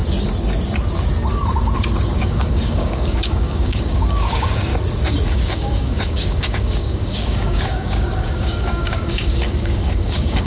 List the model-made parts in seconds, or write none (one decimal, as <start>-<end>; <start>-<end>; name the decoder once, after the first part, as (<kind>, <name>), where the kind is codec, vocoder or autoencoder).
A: 2.2-4.7 (codec, DAC); 5.3-10.5